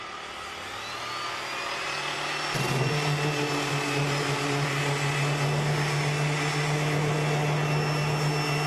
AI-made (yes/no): no